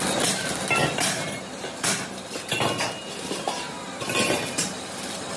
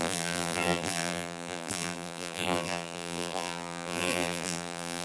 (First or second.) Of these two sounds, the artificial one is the second